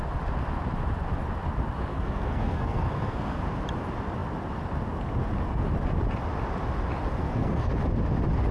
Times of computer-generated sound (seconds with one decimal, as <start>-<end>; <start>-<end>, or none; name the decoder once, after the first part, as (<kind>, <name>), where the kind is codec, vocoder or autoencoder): 1.9-3.4 (codec, SNAC); 7.2-7.7